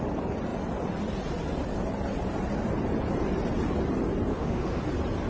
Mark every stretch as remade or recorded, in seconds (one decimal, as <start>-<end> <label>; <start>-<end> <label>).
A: 0.0-4.3 recorded; 4.3-4.8 remade; 4.8-5.3 recorded